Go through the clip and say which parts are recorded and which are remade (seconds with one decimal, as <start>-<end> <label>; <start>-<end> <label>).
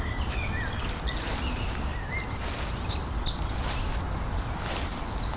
0.0-5.4 recorded